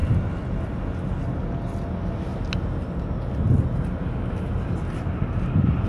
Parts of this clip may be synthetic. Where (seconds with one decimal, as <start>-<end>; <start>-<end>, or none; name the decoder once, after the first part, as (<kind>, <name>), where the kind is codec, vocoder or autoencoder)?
none